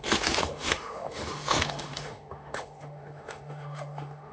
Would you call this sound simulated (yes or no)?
yes